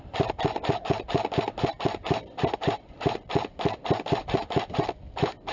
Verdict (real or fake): fake